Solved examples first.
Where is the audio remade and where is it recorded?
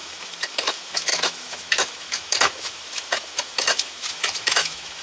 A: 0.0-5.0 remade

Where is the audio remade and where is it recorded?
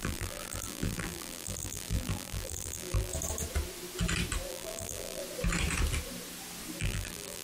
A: 0.0-3.1 remade; 3.1-4.5 recorded; 4.5-5.2 remade; 5.2-6.8 recorded; 6.8-7.4 remade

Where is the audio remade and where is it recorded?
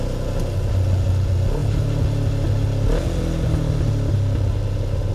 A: 0.0-5.1 recorded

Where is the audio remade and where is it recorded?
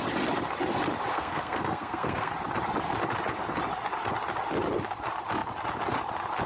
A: 0.0-1.1 recorded; 1.1-2.3 remade; 2.3-6.5 recorded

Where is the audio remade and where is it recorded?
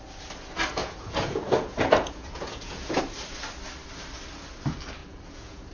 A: 0.0-0.8 recorded; 0.8-3.0 remade; 3.0-5.0 recorded; 5.0-5.7 remade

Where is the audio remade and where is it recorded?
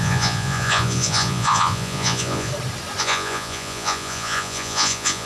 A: 0.0-2.5 remade; 2.5-3.0 recorded; 3.0-5.3 remade